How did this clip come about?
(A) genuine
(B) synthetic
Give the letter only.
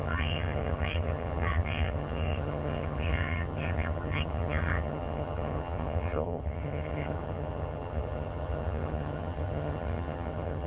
B